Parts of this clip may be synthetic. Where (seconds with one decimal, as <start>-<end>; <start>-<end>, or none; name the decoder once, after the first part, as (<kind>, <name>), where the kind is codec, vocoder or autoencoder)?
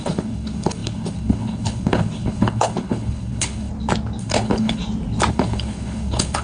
0.0-3.7 (codec, HILCodec); 4.2-4.8; 5.3-6.4